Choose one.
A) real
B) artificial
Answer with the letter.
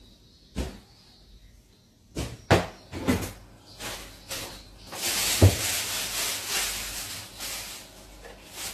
A